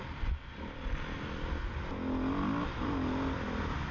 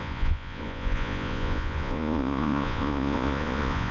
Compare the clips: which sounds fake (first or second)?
second